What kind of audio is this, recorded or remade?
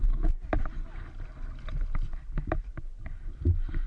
recorded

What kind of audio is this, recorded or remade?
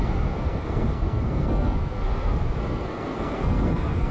remade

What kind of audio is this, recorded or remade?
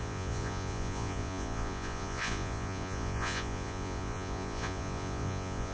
remade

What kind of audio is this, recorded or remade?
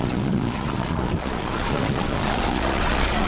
remade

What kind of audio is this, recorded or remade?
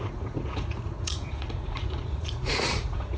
remade